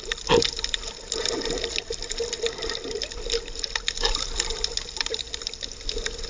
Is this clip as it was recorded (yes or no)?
yes